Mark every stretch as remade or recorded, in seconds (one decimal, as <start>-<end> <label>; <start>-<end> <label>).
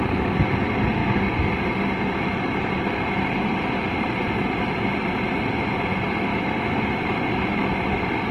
0.0-6.3 recorded; 6.3-7.0 remade; 7.0-8.3 recorded